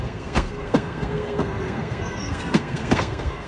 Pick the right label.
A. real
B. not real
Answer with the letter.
B